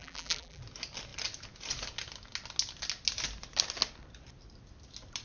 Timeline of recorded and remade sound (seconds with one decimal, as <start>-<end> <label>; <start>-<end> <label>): 0.0-0.6 remade; 0.6-5.2 recorded